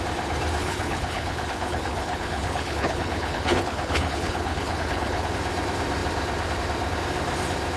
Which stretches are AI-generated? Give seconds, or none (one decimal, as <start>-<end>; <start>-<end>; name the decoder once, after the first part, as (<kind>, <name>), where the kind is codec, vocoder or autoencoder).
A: 0.6-5.3 (codec, HILCodec)

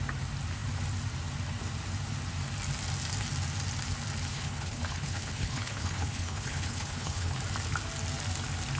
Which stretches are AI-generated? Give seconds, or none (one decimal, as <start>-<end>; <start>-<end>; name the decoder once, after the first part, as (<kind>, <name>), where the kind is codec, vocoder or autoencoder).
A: 4.3-7.4 (codec, HILCodec)

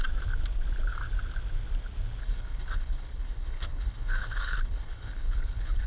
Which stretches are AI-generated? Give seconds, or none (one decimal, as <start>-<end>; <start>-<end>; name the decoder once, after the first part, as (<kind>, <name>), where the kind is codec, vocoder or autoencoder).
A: 2.2-5.9 (codec, HILCodec)

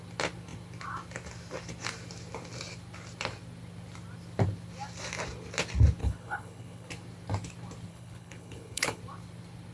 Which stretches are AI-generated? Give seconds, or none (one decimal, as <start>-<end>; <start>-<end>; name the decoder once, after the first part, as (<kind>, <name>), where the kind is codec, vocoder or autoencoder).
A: 6.0-6.9 (codec, HILCodec); 7.9-9.0

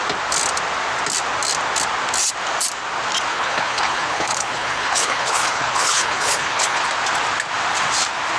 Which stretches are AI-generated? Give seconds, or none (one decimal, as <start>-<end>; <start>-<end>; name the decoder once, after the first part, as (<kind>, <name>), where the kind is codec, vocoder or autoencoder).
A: 3.3-6.9 (codec, HILCodec)